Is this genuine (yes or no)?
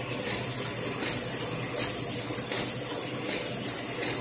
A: yes